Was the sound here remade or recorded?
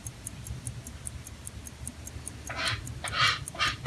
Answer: recorded